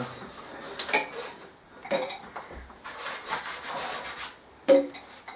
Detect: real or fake real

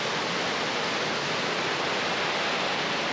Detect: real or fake real